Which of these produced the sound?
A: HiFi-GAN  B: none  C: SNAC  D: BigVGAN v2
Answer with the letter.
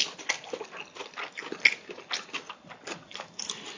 B